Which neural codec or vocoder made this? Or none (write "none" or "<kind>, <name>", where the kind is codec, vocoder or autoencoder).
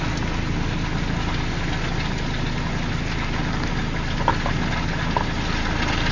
none